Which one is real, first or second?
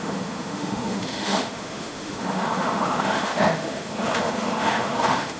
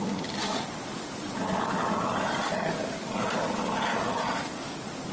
second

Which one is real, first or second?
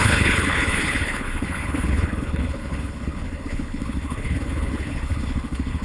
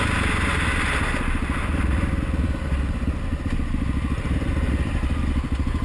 second